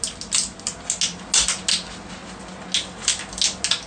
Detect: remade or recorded recorded